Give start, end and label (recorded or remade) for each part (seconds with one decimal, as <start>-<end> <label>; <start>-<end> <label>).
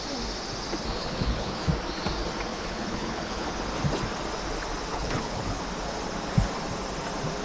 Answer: 0.0-1.0 recorded; 1.0-1.6 remade; 1.6-2.5 recorded; 2.5-3.5 remade; 3.5-4.9 recorded; 4.9-5.6 remade; 5.6-7.4 recorded